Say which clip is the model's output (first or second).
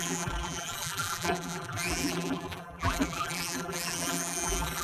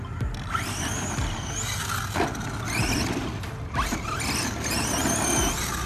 first